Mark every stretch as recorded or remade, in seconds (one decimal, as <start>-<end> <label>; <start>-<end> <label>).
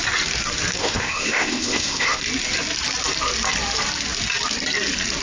0.0-0.8 recorded; 0.8-2.2 remade; 2.2-5.2 recorded